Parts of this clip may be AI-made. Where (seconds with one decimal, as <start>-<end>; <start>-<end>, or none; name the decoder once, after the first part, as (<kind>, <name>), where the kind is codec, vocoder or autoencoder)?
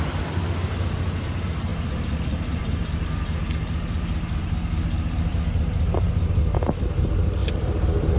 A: 1.7-6.4 (vocoder, BigVGAN v2); 7.4-8.2